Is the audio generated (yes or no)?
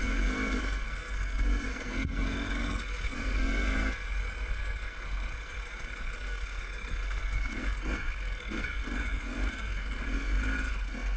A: yes